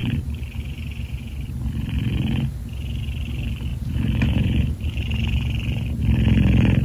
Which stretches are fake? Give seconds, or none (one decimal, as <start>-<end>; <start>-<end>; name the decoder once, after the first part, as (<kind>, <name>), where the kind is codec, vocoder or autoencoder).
0.0-1.5 (vocoder, BigVGAN v2); 3.7-6.0